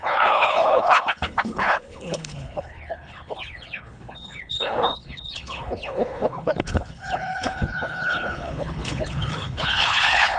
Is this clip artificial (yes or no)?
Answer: yes